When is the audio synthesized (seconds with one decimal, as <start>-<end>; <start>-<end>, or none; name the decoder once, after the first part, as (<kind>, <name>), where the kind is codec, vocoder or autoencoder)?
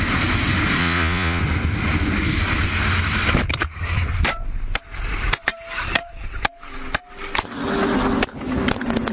0.8-1.4 (vocoder, Vocos)